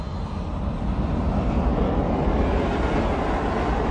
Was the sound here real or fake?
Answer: real